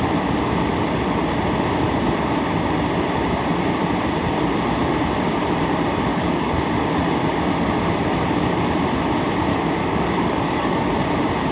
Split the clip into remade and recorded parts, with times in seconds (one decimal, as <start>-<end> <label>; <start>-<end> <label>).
0.0-6.1 recorded; 6.1-6.6 remade; 6.6-9.5 recorded; 9.5-10.9 remade; 10.9-11.5 recorded